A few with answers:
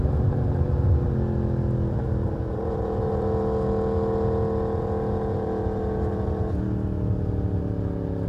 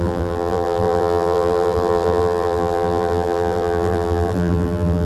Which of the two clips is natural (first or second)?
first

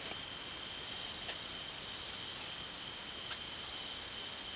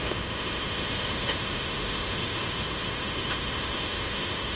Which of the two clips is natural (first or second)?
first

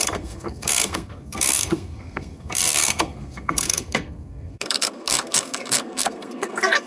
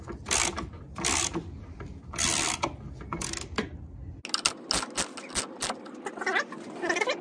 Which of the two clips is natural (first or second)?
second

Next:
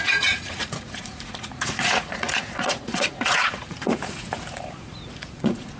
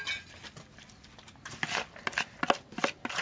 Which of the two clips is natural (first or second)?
second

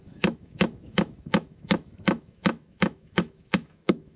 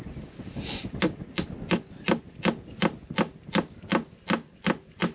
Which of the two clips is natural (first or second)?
second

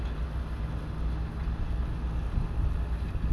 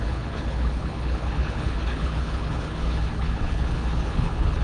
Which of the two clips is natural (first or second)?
first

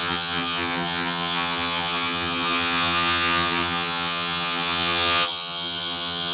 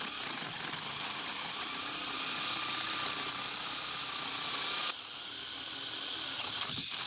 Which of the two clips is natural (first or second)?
second